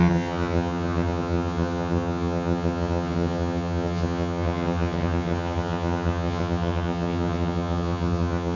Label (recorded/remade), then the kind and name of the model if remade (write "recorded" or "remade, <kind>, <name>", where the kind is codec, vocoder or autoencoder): remade, vocoder, HiFi-GAN